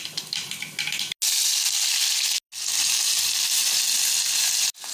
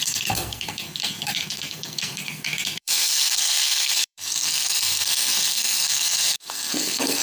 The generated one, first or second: second